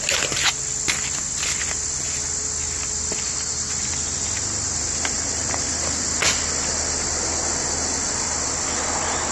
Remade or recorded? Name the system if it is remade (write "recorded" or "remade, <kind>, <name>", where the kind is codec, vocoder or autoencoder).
recorded